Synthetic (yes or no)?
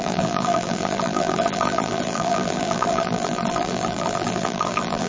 yes